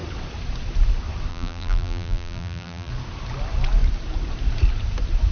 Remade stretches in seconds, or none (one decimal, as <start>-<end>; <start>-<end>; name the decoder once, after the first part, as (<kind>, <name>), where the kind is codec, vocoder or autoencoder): 1.3-2.9 (vocoder, BigVGAN v2)

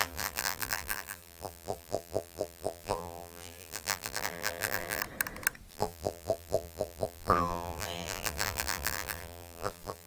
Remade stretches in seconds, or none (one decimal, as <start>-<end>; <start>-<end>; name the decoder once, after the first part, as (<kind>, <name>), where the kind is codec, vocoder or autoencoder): 0.0-5.0 (vocoder, BigVGAN v2); 5.7-10.1

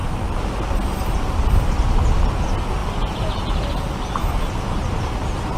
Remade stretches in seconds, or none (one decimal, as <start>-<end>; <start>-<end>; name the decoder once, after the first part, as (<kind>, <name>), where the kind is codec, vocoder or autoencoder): none